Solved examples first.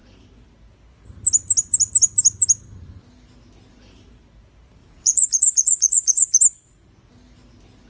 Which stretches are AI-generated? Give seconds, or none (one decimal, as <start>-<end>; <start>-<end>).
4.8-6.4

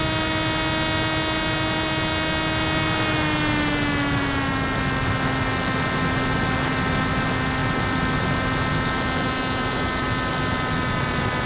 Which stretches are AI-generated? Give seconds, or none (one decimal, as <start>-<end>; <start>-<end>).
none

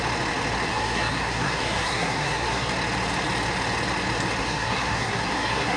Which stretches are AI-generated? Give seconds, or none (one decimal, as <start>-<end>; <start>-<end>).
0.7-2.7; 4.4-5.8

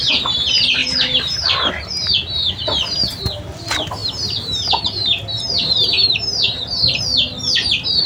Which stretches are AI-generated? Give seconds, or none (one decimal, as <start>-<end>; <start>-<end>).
0.8-1.7; 4.0-7.0

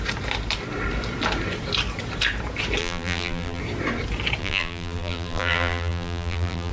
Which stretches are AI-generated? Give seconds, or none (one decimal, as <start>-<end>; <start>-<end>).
2.8-3.6; 4.4-6.7